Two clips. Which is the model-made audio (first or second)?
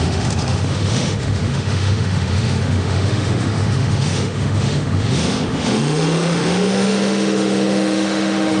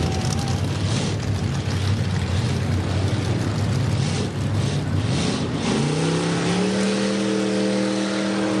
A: first